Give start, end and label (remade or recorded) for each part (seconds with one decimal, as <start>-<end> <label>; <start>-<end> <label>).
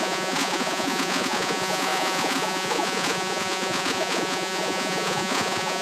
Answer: 0.0-5.8 remade